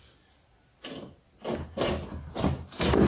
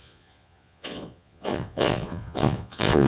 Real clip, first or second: first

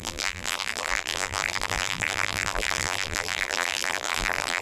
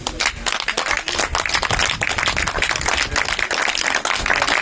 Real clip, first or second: second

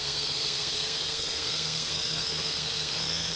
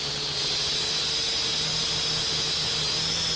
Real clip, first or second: second